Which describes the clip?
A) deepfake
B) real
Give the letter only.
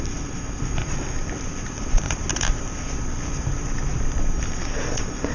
A